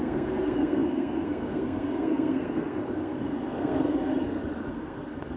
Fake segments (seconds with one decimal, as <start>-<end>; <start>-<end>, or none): 0.0-4.1; 4.7-5.4